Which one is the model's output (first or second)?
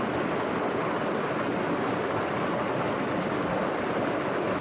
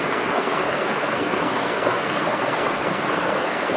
second